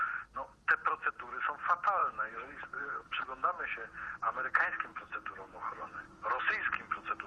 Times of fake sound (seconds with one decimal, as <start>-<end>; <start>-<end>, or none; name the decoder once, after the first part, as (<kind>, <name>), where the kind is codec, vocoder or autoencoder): 2.0-6.4 (vocoder, Vocos)